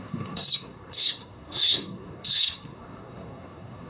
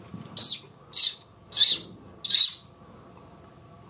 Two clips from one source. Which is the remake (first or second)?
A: first